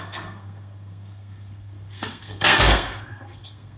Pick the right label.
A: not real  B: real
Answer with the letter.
A